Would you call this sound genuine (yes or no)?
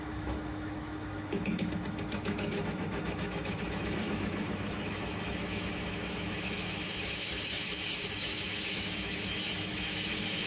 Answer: no